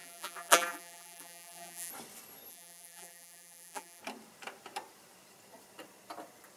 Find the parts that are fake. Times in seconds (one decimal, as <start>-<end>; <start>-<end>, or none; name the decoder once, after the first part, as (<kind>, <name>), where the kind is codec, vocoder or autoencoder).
0.0-1.9 (vocoder, BigVGAN v2); 2.5-4.0